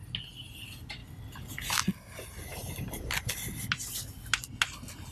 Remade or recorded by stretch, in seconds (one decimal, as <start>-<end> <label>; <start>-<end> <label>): 0.0-5.1 recorded